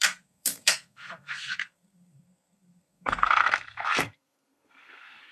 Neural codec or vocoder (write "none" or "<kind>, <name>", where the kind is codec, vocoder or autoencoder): codec, SNAC